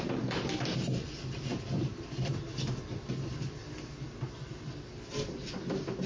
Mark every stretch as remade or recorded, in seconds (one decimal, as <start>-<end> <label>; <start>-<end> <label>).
0.0-6.1 recorded

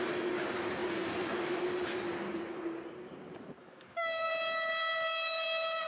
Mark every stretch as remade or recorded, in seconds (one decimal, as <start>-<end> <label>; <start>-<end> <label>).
0.0-3.6 recorded; 3.6-4.3 remade; 4.3-5.9 recorded

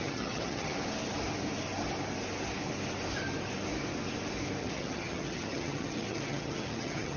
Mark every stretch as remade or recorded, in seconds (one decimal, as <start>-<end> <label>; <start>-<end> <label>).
0.0-0.7 remade; 0.7-4.6 recorded; 4.6-7.2 remade

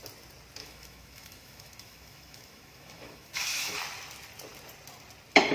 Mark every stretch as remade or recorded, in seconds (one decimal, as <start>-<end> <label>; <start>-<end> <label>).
0.0-0.6 recorded; 0.6-3.8 remade; 3.8-5.5 recorded

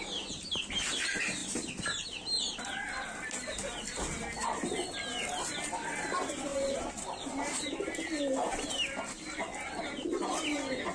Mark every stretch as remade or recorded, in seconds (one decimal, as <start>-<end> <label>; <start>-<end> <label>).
0.0-10.9 recorded

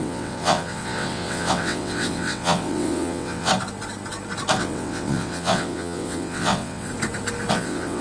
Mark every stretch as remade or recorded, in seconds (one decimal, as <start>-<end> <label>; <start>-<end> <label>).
0.0-3.5 remade; 3.5-4.6 recorded; 4.6-6.9 remade; 6.9-7.5 recorded; 7.5-8.0 remade

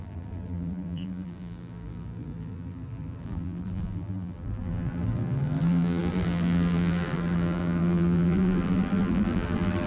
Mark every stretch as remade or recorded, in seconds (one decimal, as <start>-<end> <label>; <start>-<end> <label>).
0.0-9.9 remade

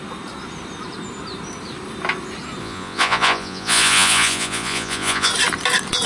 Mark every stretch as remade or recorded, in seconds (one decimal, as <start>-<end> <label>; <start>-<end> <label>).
0.0-2.6 recorded; 2.6-5.3 remade; 5.3-6.1 recorded